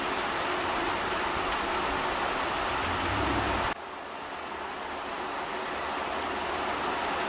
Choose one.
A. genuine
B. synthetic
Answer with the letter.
A